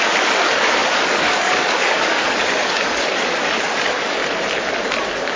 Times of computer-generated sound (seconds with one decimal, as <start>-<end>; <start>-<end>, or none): 0.0-4.2; 5.0-5.4

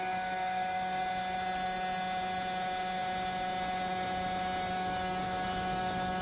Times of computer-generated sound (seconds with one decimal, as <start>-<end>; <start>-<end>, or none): 0.0-1.0; 4.7-6.2

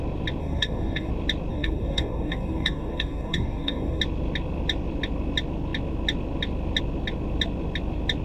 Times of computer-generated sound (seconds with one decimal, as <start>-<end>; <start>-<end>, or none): 0.4-1.1; 1.5-4.0